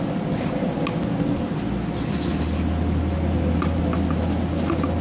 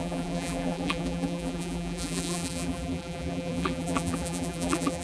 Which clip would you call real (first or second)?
first